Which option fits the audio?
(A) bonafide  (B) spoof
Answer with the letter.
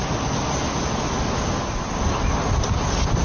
A